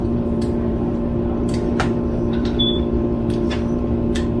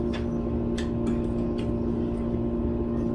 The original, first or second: second